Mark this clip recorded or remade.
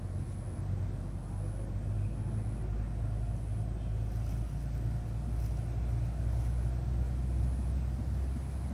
recorded